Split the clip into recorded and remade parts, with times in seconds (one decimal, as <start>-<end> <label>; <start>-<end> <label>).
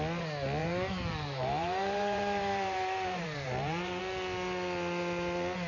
0.0-0.6 recorded; 0.6-4.0 remade; 4.0-5.7 recorded